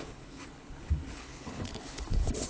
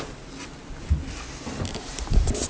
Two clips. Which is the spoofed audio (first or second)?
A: first